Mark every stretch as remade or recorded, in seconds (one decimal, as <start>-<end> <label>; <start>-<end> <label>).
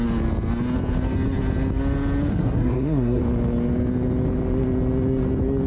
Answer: 0.0-2.3 recorded; 2.3-3.2 remade; 3.2-5.7 recorded